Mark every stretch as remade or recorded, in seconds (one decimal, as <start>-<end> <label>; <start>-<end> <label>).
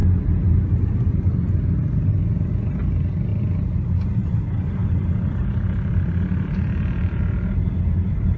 0.0-8.4 recorded